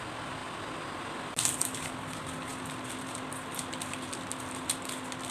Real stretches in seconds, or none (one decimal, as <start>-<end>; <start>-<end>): 0.0-5.3